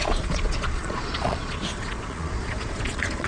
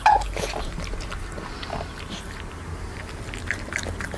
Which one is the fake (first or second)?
first